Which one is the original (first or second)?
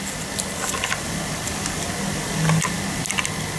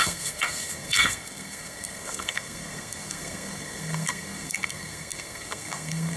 first